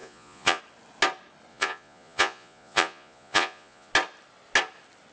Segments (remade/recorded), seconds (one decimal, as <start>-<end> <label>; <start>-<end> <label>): 0.0-0.6 remade; 0.6-1.5 recorded; 1.5-3.9 remade; 3.9-5.1 recorded